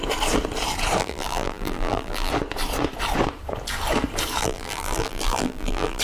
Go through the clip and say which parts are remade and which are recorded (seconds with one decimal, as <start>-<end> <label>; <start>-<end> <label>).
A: 0.0-1.0 recorded; 1.0-2.3 remade; 2.3-4.4 recorded; 4.4-6.0 remade